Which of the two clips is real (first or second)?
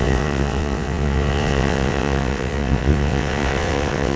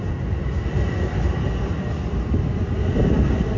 second